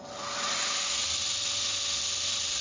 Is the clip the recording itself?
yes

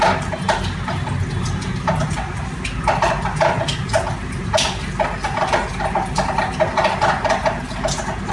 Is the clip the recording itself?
yes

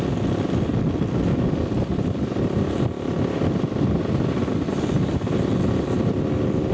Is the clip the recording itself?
yes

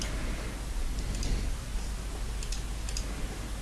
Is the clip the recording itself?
yes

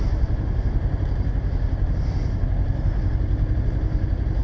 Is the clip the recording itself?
yes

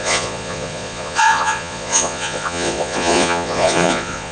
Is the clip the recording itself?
no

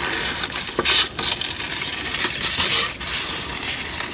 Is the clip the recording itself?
yes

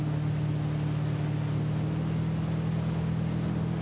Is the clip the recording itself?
yes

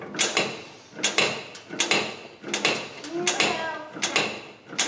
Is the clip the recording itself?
yes